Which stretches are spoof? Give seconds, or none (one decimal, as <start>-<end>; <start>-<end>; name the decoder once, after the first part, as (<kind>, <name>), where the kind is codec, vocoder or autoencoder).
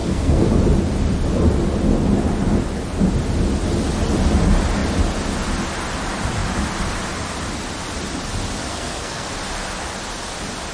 0.0-0.5 (codec, SNAC); 8.7-9.3